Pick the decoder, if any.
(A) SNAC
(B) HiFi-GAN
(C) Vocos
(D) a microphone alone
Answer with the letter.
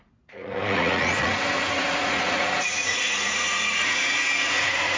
C